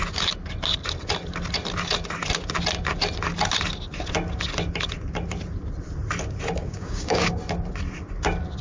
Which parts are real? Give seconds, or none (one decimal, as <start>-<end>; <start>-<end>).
0.0-6.6; 7.4-8.6